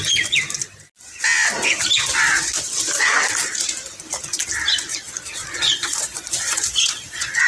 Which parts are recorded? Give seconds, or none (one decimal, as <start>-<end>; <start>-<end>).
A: 0.0-4.9